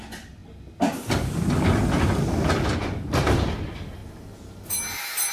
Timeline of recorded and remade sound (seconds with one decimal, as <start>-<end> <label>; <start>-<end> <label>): 0.0-5.3 recorded